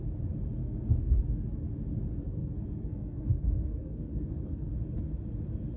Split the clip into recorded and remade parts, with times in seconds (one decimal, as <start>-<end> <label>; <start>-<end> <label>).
0.0-0.6 recorded; 0.6-1.2 remade; 1.2-2.2 recorded; 2.2-4.7 remade; 4.7-5.8 recorded